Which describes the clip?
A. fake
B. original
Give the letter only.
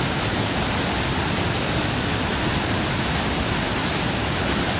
B